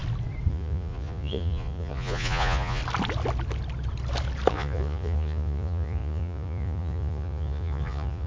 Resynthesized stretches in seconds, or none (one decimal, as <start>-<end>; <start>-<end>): 0.5-2.8; 4.5-8.3